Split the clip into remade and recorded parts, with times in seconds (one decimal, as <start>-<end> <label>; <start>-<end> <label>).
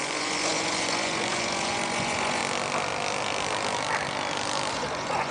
0.0-2.4 remade; 2.4-4.7 recorded; 4.7-5.3 remade